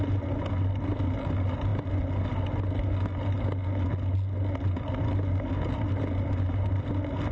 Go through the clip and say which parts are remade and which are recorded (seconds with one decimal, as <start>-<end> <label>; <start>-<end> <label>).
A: 0.0-7.3 recorded